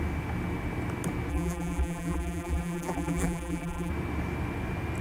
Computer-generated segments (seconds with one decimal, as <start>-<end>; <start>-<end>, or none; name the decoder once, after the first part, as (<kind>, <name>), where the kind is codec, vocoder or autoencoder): 1.3-3.9 (vocoder, BigVGAN v2)